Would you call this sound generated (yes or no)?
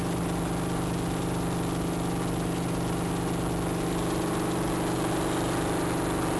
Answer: no